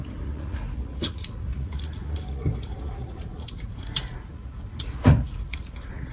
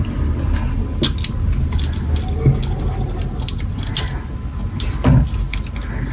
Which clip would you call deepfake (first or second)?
first